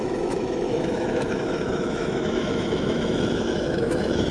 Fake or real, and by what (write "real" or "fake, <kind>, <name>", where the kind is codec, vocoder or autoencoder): fake, autoencoder, DAC-VAE